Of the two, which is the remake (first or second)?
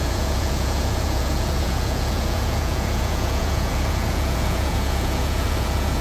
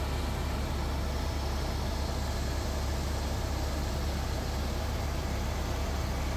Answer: first